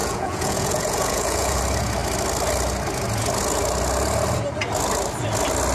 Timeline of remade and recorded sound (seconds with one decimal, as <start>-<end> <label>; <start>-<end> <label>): 0.0-1.6 remade; 1.6-5.7 recorded